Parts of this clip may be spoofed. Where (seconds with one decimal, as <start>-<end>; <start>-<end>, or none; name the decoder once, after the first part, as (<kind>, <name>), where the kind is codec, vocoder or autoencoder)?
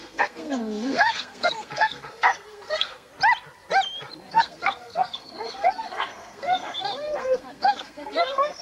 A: 0.0-3.1 (codec, SNAC); 4.3-8.6